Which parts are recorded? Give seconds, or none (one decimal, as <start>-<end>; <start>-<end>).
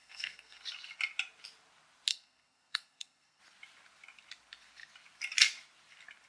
0.6-2.1; 3.4-6.3